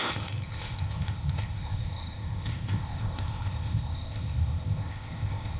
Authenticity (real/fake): fake